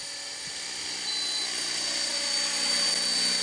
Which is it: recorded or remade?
recorded